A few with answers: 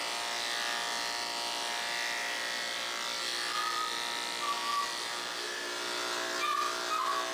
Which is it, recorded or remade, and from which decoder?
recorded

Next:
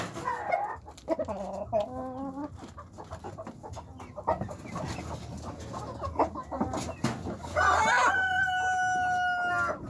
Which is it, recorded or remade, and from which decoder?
recorded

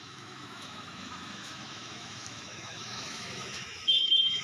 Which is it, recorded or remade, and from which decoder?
remade, autoencoder, DAC-VAE